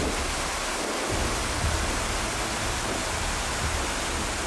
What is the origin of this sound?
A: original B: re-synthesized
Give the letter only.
A